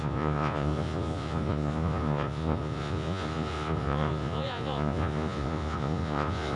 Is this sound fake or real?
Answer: fake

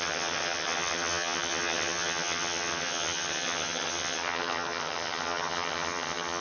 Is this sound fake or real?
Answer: fake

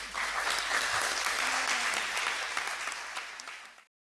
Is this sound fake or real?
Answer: real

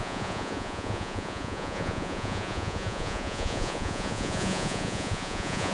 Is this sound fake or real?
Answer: fake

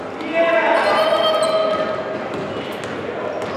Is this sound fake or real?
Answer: real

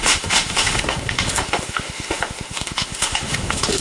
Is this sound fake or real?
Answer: fake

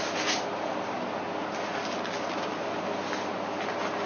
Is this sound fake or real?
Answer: real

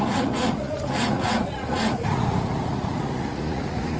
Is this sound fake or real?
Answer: fake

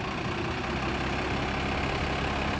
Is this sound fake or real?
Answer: real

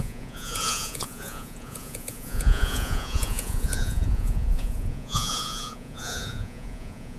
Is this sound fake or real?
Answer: fake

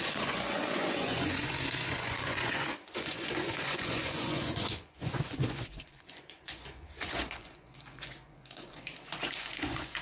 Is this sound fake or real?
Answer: fake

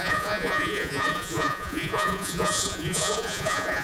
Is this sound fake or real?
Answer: fake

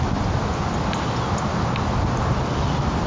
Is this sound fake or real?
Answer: real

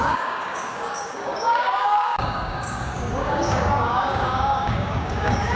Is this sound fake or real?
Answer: fake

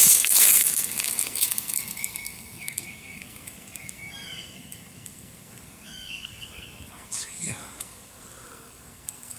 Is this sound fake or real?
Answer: fake